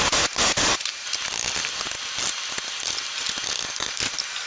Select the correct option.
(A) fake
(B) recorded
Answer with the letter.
B